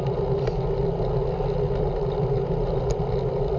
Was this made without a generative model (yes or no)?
yes